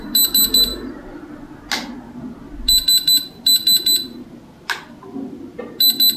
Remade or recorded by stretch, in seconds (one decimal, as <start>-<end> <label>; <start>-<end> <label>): 0.0-6.2 recorded